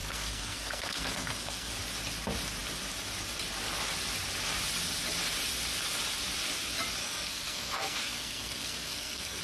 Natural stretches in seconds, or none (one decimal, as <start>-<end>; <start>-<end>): 1.7-7.0